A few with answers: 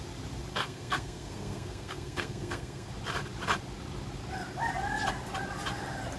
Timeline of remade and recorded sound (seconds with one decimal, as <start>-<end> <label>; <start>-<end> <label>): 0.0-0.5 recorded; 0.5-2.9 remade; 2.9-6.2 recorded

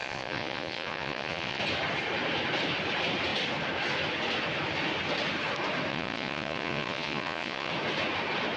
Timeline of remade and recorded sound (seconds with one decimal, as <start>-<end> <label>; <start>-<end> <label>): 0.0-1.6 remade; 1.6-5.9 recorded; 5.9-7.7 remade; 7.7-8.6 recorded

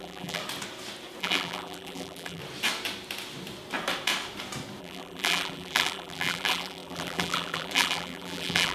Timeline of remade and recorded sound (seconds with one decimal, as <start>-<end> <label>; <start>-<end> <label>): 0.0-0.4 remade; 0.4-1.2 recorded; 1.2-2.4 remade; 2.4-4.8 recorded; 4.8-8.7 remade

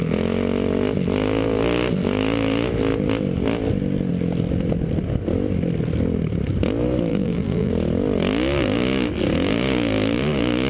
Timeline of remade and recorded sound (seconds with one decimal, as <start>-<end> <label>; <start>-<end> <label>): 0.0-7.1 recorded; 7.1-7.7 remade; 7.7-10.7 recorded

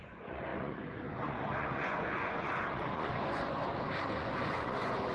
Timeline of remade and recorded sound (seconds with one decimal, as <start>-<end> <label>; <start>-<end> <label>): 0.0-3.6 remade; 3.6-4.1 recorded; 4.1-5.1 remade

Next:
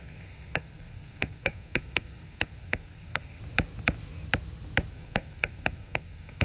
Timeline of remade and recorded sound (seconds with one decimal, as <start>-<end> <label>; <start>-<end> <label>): 0.0-3.4 remade; 3.4-4.9 recorded; 4.9-6.4 remade

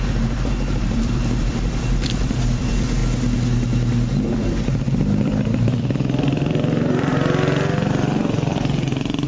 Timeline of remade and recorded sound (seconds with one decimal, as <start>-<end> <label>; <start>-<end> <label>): 0.0-3.0 remade; 3.0-4.3 recorded; 4.3-7.1 remade; 7.1-7.9 recorded; 7.9-9.3 remade

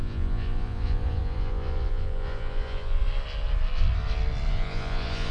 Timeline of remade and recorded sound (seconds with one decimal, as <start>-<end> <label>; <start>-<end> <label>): 0.0-3.0 remade; 3.0-4.5 recorded; 4.5-5.3 remade